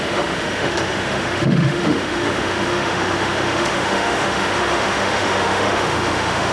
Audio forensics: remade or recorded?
remade